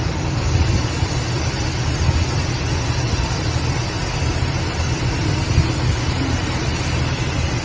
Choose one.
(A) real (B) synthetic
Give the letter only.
A